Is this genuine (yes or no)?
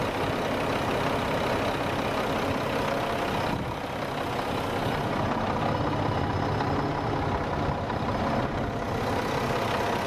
yes